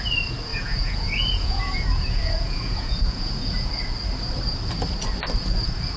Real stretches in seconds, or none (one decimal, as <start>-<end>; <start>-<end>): 0.0-0.5; 3.7-6.0